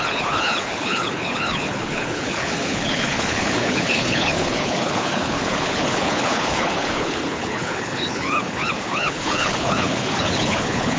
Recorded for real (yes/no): no